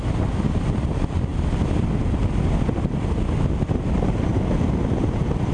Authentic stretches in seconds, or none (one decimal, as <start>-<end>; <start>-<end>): 0.0-5.5